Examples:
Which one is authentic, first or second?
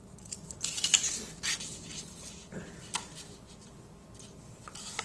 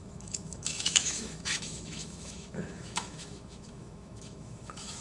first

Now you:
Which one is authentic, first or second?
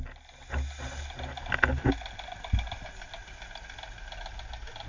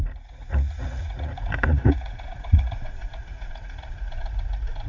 first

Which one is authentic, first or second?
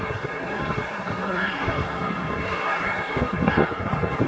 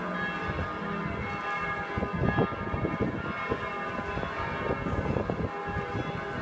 second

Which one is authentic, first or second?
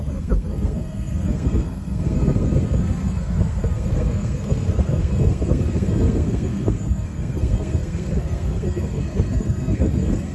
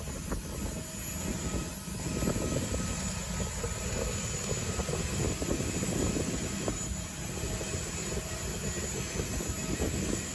second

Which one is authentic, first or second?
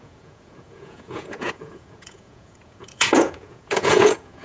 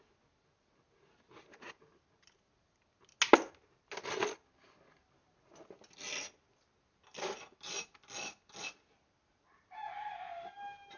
second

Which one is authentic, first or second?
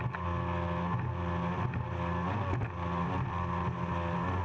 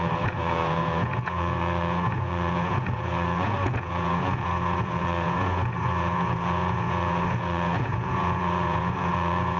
first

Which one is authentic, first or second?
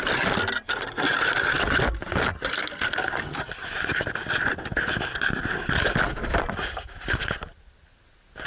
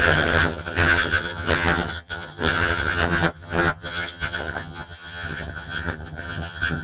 first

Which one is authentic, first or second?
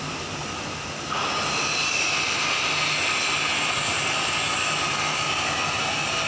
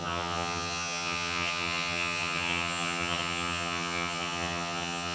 first